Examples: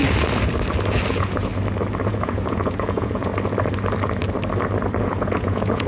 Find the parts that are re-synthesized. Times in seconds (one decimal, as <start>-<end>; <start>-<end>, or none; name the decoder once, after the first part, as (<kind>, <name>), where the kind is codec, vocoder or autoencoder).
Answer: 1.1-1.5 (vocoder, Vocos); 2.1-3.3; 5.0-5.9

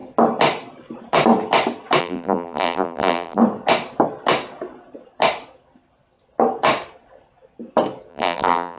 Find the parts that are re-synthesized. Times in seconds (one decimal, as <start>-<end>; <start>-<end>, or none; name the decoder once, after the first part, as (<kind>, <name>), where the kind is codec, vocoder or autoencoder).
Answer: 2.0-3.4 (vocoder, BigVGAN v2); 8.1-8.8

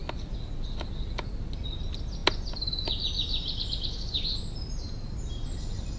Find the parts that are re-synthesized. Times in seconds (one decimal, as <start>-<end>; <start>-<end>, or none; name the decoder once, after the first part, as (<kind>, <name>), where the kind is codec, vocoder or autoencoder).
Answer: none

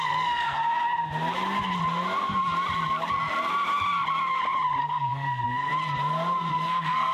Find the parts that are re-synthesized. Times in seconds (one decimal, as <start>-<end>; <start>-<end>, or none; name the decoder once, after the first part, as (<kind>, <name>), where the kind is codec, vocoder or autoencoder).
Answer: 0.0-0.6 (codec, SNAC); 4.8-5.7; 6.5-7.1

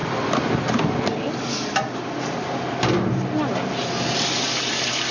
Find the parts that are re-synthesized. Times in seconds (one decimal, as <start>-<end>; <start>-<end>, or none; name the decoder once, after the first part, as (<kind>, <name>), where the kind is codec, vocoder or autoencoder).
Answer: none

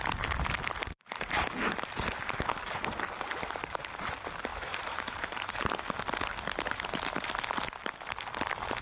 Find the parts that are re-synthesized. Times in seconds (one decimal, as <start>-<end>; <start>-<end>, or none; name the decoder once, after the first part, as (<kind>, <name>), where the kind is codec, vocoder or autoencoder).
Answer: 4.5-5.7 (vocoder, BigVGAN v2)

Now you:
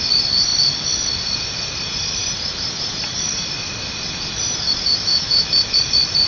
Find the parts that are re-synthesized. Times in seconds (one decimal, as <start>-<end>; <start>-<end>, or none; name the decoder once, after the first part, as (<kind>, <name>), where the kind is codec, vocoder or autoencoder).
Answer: 5.1-5.8 (autoencoder, DAC-VAE)

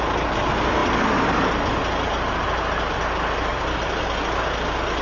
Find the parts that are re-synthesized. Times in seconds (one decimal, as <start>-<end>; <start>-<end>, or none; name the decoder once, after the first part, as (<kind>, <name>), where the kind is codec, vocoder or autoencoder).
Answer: 3.5-4.0 (vocoder, BigVGAN v2)